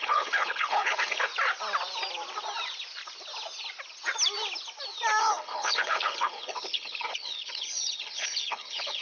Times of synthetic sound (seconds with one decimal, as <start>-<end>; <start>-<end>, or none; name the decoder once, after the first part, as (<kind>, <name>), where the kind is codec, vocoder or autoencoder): 0.0-1.3 (codec, HILCodec); 5.2-9.0